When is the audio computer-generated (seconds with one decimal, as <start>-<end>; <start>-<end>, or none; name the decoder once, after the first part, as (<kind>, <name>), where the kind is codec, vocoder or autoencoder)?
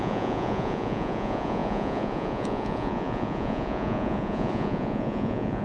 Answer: 0.0-5.6 (vocoder, Vocos)